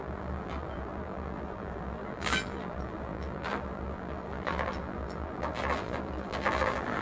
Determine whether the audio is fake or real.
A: fake